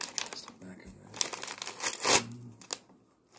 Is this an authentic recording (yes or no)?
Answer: yes